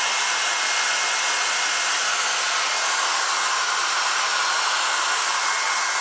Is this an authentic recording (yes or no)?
yes